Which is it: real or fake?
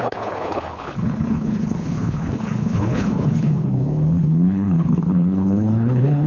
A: fake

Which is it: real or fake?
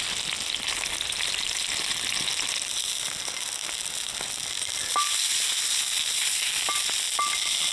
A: real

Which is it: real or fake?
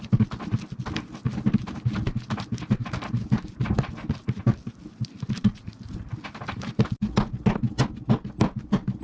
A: real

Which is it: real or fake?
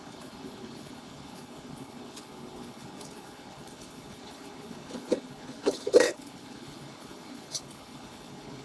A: fake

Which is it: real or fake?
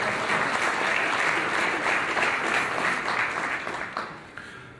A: real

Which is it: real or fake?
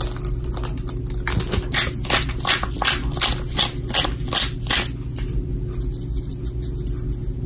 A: real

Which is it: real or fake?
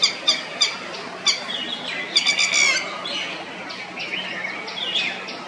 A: real